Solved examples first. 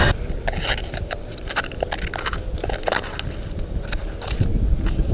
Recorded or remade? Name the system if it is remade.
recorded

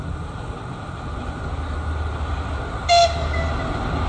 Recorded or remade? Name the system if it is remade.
recorded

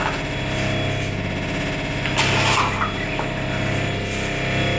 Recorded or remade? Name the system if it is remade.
recorded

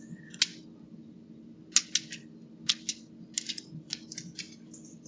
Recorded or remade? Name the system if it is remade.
recorded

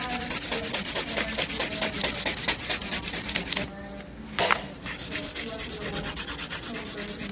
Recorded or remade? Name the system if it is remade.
recorded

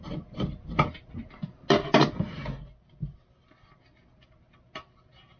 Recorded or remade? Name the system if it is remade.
recorded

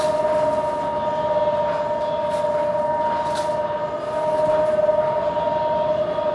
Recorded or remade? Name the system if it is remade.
recorded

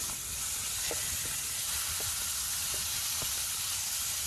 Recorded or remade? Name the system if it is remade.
recorded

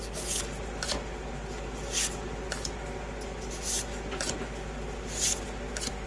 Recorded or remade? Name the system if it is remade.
recorded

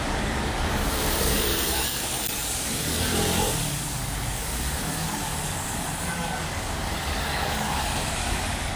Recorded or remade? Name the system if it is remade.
remade, codec, DAC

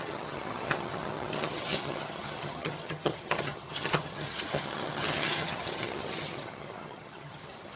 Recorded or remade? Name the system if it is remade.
remade, vocoder, HiFi-GAN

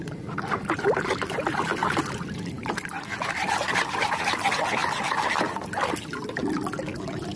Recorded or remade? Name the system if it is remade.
recorded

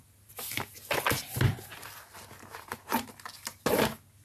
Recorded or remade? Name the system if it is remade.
recorded